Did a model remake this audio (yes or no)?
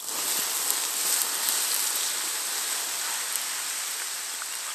no